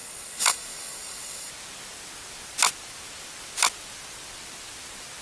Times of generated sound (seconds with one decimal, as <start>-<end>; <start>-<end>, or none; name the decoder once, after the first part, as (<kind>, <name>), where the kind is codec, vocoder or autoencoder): 0.0-1.5 (codec, DAC)